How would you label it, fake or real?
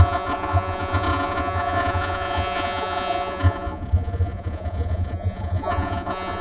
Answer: fake